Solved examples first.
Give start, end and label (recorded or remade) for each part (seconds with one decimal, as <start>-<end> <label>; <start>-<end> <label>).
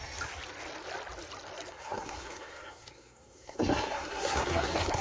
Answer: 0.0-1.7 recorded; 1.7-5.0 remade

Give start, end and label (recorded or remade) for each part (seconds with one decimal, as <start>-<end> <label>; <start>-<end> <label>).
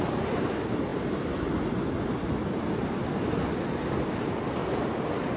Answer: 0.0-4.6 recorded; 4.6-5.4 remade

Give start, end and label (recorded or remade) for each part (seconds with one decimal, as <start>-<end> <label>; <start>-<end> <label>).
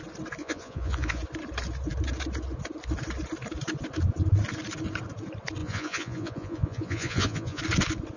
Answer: 0.0-0.4 recorded; 0.4-1.2 remade; 1.2-5.6 recorded; 5.6-7.6 remade; 7.6-8.2 recorded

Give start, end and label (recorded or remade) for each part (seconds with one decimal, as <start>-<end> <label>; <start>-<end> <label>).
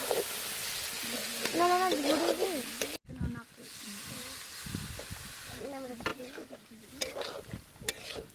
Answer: 0.0-8.3 recorded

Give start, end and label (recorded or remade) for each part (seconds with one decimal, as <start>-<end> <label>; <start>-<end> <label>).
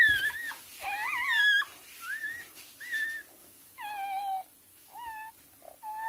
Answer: 0.0-3.4 recorded; 3.4-3.9 remade; 3.9-4.7 recorded; 4.7-5.3 remade; 5.3-6.1 recorded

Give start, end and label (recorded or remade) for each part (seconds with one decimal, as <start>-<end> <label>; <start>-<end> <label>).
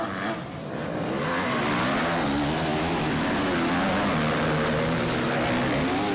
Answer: 0.0-6.1 recorded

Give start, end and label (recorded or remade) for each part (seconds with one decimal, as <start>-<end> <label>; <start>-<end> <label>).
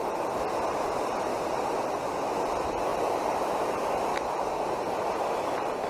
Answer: 0.0-2.9 recorded; 2.9-3.5 remade; 3.5-5.9 recorded